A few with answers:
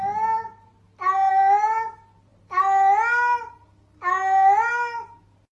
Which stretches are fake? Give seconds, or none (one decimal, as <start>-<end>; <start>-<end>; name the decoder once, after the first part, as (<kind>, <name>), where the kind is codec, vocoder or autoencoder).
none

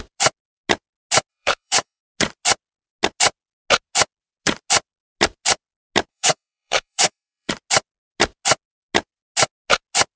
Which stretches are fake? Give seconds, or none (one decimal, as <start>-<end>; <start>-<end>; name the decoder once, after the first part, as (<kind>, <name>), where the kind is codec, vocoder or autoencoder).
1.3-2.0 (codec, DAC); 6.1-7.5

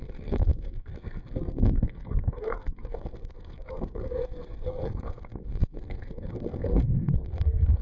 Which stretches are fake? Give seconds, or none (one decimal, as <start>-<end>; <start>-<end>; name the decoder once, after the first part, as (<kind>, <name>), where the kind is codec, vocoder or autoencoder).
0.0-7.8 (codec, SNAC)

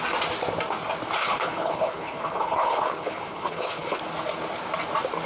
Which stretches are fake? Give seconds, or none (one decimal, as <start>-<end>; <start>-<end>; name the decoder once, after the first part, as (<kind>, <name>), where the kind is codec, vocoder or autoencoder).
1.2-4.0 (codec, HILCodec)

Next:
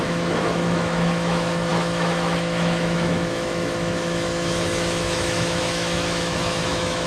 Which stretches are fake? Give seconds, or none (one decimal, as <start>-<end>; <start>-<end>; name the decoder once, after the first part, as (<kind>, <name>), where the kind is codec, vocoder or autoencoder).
0.0-7.1 (autoencoder, DAC-VAE)

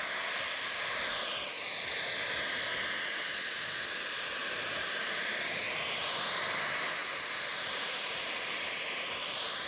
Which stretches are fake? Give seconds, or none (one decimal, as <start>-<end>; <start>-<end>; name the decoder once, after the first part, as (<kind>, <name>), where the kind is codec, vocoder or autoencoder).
4.4-5.6 (vocoder, BigVGAN v2); 7.5-8.2